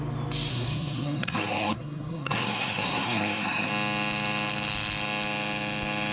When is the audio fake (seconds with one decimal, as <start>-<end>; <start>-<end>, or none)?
0.5-3.7